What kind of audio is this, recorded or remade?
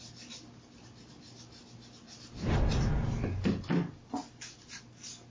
recorded